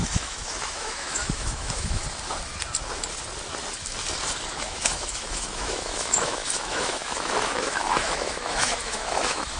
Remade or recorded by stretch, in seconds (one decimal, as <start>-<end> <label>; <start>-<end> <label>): 0.0-2.0 remade; 2.0-4.5 recorded; 4.5-9.6 remade